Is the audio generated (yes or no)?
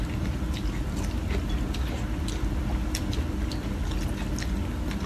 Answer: no